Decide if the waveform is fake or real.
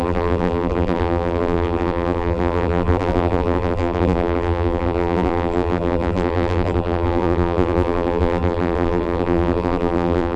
fake